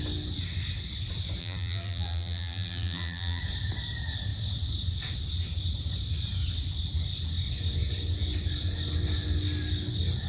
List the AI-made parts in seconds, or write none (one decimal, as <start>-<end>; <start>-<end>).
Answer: 1.4-3.4